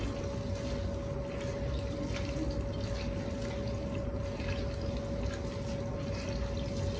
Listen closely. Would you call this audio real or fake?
real